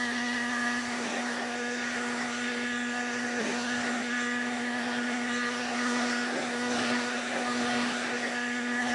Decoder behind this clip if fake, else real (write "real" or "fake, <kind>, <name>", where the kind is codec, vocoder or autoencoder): fake, codec, SNAC